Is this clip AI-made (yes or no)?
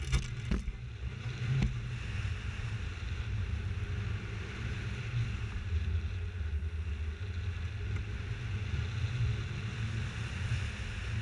no